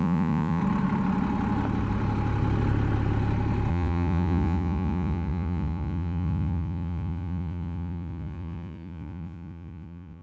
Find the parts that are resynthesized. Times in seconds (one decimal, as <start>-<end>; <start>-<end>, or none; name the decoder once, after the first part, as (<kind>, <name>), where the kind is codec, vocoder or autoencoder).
0.0-0.6 (vocoder, Vocos); 3.7-10.2